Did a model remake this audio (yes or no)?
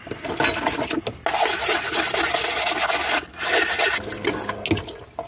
no